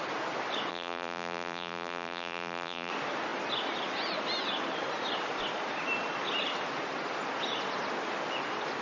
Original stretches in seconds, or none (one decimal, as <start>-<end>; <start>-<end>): 0.0-0.7; 2.9-8.8